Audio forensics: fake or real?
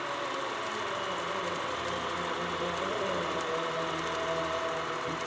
real